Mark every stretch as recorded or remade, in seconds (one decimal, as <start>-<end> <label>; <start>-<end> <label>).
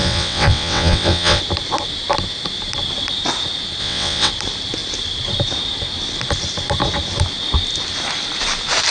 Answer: 0.0-1.4 remade; 1.4-3.8 recorded; 3.8-4.3 remade; 4.3-8.9 recorded